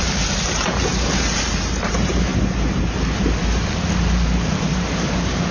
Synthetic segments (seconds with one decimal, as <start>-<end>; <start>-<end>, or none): 0.0-2.3; 4.6-5.5